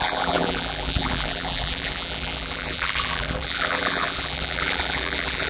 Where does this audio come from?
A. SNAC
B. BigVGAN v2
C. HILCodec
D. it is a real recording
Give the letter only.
B